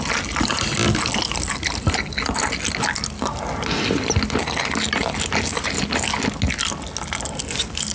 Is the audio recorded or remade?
recorded